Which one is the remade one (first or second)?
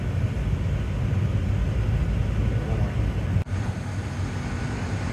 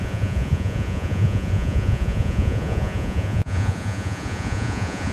second